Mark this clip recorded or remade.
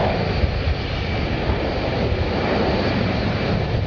recorded